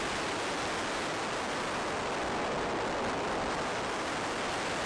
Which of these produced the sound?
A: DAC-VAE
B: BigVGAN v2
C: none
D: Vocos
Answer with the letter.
C